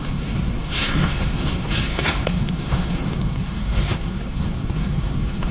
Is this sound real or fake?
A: fake